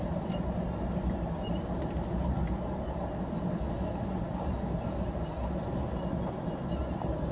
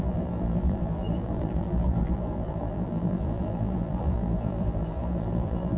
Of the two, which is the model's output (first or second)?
second